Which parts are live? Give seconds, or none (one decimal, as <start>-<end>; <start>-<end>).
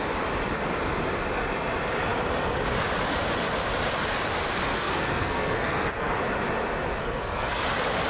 0.0-4.7; 6.2-7.0; 7.6-8.1